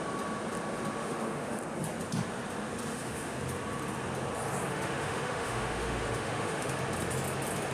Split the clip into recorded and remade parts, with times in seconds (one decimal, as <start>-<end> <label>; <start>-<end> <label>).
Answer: 0.0-1.0 recorded; 1.0-1.6 remade; 1.6-2.9 recorded; 2.9-3.4 remade; 3.4-4.7 recorded; 4.7-6.7 remade; 6.7-7.7 recorded